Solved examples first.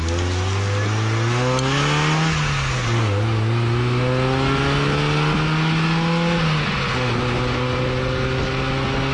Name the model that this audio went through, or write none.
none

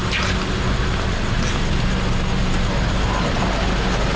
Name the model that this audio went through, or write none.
none